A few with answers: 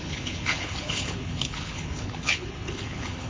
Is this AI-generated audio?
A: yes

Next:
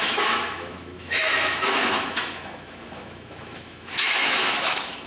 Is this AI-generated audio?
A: yes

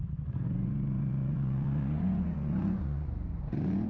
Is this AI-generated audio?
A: yes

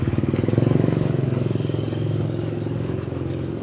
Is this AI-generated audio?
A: yes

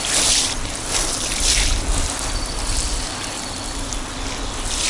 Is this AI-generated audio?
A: no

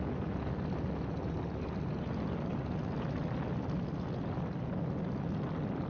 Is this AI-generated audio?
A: no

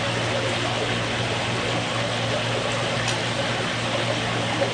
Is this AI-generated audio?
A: no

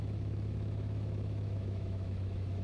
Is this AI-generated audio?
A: yes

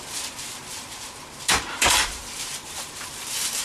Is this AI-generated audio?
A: yes